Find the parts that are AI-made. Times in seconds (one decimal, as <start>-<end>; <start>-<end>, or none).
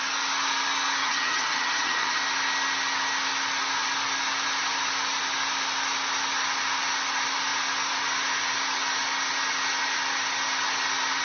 1.0-2.2